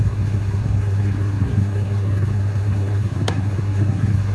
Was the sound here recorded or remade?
remade